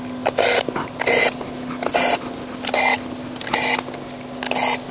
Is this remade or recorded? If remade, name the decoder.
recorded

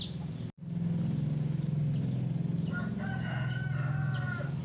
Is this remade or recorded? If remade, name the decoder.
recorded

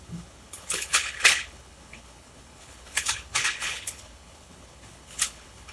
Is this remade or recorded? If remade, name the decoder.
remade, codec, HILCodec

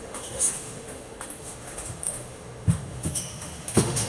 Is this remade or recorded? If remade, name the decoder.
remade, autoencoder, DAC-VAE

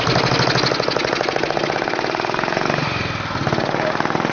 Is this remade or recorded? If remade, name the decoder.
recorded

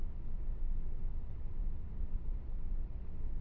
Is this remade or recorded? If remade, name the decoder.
remade, vocoder, WaveNeXt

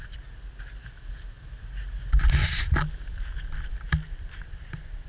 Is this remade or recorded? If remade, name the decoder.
recorded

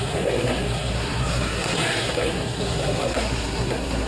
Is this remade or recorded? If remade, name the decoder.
remade, codec, SNAC